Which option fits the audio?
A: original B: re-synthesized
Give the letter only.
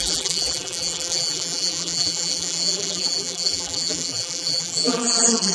B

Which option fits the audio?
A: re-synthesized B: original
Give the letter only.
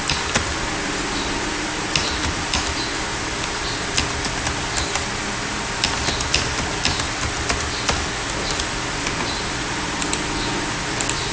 B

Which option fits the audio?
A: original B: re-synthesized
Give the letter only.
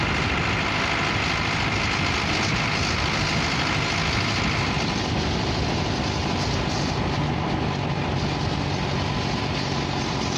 A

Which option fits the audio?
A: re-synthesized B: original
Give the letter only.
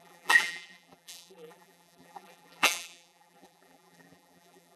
A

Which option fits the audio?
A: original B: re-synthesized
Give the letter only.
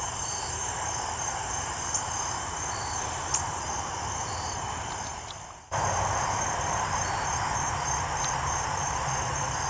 B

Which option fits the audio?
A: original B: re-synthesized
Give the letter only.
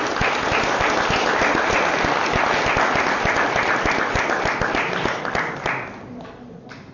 A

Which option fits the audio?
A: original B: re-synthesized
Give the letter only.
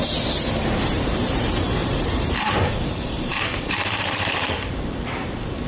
B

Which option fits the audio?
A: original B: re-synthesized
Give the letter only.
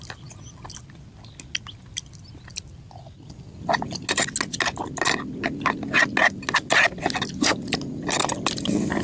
A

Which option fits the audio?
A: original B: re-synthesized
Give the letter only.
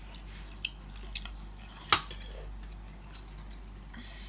A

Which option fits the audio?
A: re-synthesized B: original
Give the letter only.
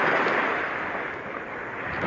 B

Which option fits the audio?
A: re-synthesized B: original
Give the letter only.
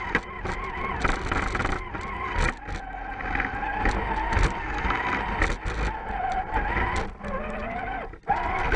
B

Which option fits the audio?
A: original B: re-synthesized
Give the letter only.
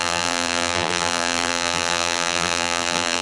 B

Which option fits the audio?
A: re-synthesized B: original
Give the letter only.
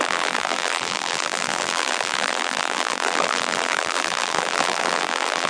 A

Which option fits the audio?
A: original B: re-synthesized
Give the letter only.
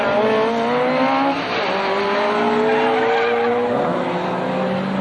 A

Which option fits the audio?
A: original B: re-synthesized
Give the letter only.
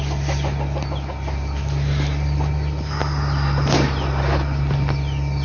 A